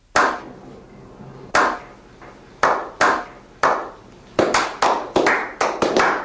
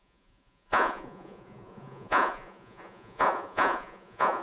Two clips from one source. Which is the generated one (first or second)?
second